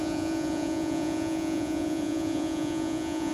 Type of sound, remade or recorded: remade